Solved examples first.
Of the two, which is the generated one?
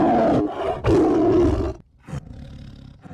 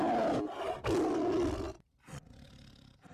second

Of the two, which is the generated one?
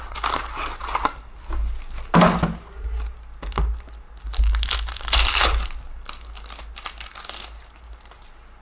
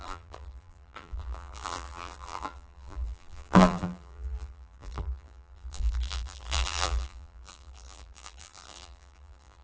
second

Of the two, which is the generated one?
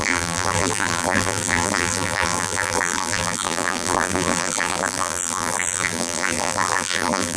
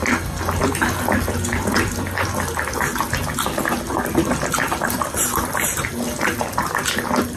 first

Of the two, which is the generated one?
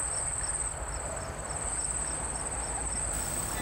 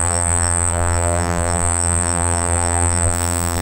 second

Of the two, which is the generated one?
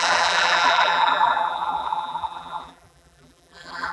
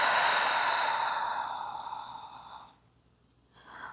first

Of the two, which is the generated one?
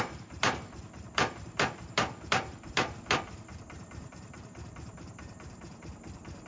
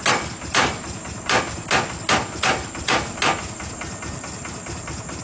first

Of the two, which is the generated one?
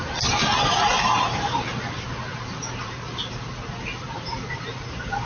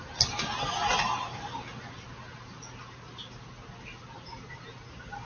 first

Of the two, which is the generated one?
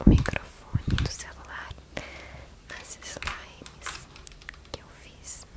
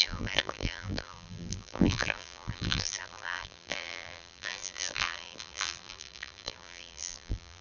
second